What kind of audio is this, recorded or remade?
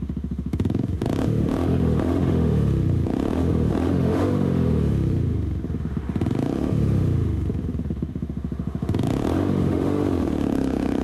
remade